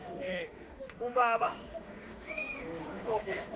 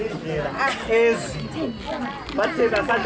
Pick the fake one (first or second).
first